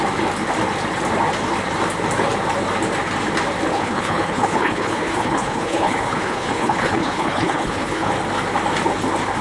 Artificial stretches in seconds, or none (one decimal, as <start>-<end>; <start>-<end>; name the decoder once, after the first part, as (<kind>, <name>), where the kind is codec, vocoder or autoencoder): 3.7-8.1 (codec, HILCodec)